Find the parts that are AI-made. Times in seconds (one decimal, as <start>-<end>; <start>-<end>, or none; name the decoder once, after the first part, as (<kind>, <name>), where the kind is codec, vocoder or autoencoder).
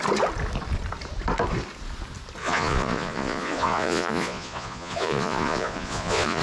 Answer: 2.4-6.4 (vocoder, Vocos)